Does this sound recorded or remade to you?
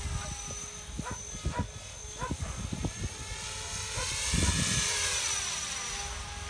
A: recorded